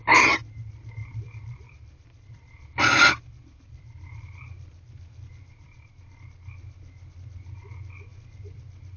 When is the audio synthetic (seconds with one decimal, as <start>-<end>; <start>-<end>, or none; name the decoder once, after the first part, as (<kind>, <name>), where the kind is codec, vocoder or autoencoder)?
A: 1.0-5.9 (vocoder, BigVGAN v2); 8.1-8.6